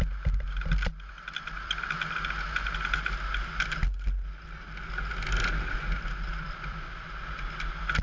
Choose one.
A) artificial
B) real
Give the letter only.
B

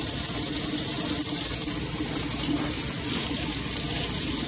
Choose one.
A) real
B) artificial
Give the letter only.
A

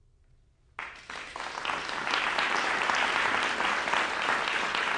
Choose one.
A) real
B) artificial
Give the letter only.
A